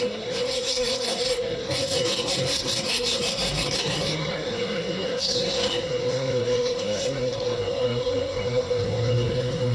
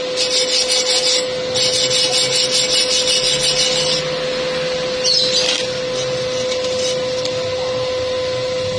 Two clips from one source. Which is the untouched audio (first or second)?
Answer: second